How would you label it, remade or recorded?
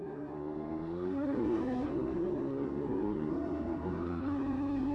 remade